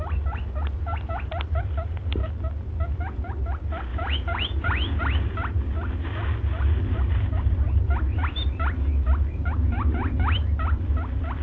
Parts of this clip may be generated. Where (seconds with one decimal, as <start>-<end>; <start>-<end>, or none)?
3.9-5.0

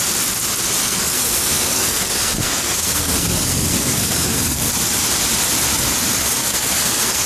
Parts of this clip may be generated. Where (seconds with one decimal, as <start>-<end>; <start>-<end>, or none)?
0.8-4.7; 6.4-7.3

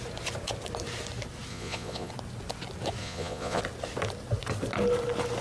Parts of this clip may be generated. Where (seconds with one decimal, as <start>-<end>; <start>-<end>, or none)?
1.5-2.1; 3.0-3.6

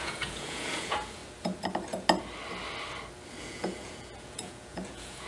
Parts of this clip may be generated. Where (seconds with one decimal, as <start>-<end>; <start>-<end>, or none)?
0.0-1.2; 3.4-5.3

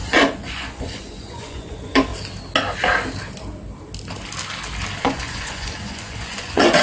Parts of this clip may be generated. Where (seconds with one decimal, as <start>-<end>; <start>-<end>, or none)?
0.0-2.1; 5.0-6.8

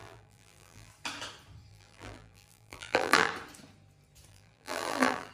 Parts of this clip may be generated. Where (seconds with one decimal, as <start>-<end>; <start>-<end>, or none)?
0.0-0.9; 1.7-3.3; 4.3-5.3

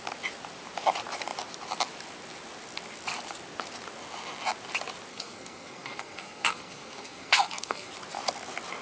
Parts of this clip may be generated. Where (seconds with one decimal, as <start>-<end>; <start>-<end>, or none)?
5.1-7.9

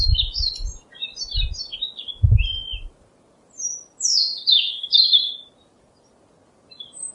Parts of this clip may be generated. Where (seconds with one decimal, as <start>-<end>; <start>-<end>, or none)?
4.1-5.3